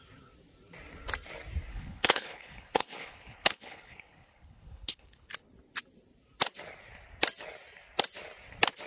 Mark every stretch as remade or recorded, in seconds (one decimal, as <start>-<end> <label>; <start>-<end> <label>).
0.0-1.7 recorded; 1.7-5.3 remade; 5.3-8.9 recorded